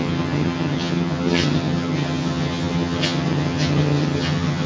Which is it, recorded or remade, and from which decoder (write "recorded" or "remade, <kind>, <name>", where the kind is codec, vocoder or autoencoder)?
remade, vocoder, HiFi-GAN